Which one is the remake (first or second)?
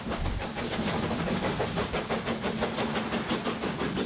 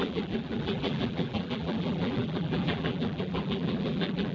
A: second